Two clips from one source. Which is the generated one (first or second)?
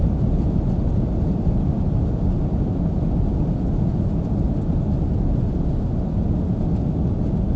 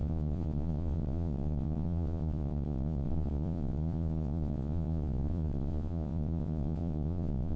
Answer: second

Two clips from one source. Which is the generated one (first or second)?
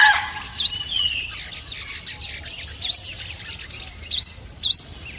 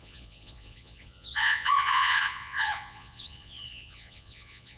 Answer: second